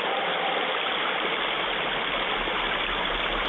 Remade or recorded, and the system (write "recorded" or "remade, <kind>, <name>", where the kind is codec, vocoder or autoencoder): recorded